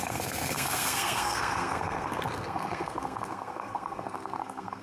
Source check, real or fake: fake